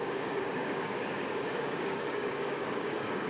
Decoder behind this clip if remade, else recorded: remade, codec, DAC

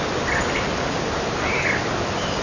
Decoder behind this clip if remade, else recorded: recorded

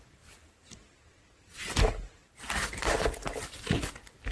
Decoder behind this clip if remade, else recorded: recorded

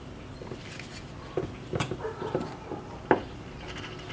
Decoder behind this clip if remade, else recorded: recorded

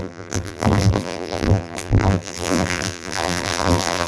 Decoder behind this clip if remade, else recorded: remade, vocoder, BigVGAN v2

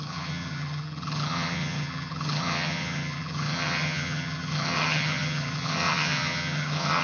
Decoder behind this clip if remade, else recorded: remade, vocoder, HiFi-GAN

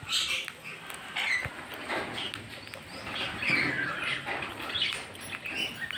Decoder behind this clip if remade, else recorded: recorded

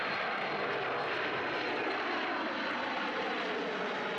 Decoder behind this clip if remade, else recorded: recorded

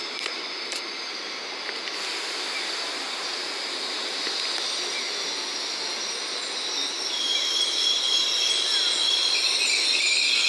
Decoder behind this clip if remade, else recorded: recorded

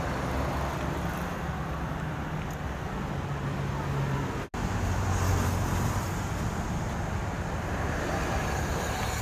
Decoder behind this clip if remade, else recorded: recorded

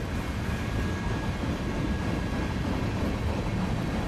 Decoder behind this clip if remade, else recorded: recorded